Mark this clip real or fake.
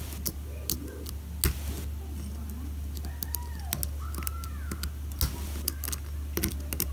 real